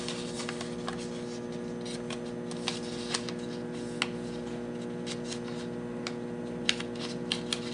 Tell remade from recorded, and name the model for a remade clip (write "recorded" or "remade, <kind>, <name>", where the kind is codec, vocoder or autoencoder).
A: recorded